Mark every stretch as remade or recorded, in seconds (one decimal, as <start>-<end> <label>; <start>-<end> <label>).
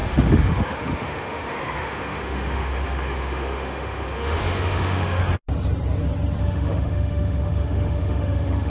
0.0-5.2 remade; 5.2-6.4 recorded; 6.4-8.7 remade